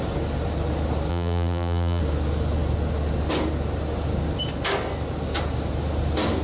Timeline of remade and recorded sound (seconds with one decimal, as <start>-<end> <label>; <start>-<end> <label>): 0.0-1.1 recorded; 1.1-2.0 remade; 2.0-6.4 recorded